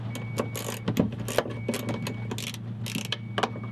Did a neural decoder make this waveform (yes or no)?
no